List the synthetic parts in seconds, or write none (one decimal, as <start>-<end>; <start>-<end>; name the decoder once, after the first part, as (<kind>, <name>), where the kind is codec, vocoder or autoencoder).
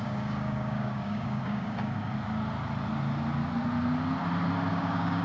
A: 0.0-2.1 (codec, DAC); 4.7-5.2